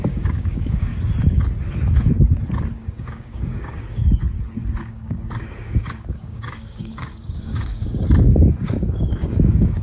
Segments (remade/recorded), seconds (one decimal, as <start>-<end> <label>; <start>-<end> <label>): 0.0-0.9 remade; 0.9-2.8 recorded; 2.8-4.0 remade; 4.0-4.8 recorded; 4.8-9.8 remade